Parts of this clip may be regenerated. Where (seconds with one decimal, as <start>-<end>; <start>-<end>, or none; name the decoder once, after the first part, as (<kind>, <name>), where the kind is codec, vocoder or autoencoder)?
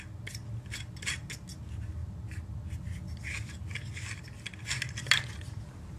none